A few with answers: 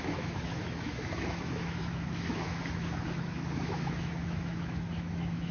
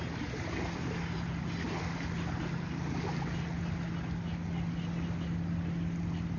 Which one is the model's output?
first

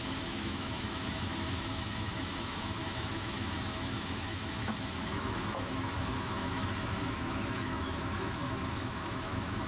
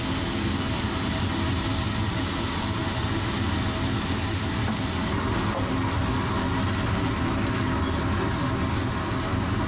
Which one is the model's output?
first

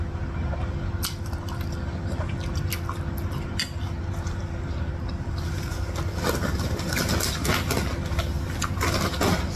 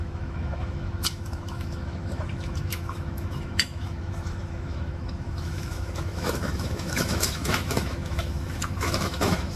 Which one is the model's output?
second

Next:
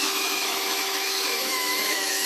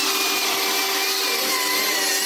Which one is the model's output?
first